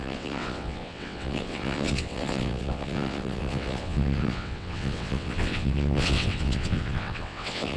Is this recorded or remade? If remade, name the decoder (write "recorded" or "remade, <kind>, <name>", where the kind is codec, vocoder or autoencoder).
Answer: remade, vocoder, WaveNeXt